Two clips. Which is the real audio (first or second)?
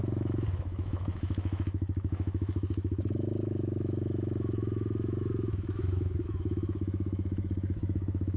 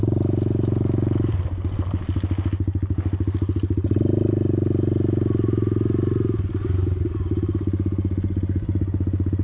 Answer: second